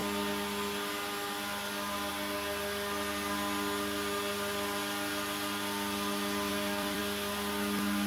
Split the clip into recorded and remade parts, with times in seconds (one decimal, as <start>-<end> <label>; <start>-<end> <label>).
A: 0.0-6.5 recorded; 6.5-7.0 remade; 7.0-8.1 recorded